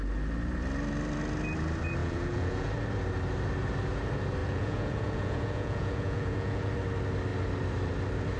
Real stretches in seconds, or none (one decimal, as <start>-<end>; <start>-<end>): 0.0-2.0; 2.7-4.4; 6.7-8.4